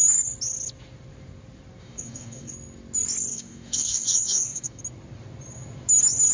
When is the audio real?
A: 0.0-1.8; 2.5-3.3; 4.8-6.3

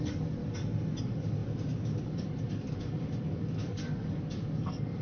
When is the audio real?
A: 0.4-1.0

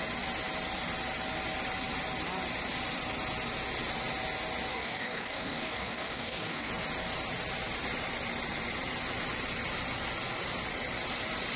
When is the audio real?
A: 0.0-4.7; 6.7-11.6

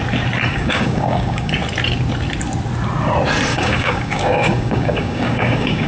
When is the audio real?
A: 0.0-0.5; 1.5-3.5

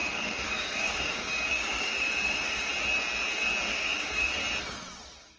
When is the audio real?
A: 2.7-3.7; 4.3-5.4

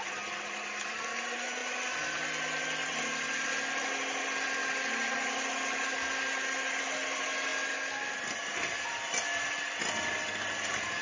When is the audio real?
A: 0.0-11.0

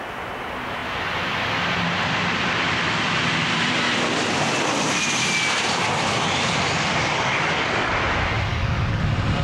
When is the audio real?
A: 0.0-7.0; 7.9-8.5; 9.0-9.4

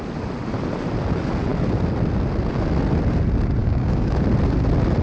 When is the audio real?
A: 0.0-3.6; 4.2-5.0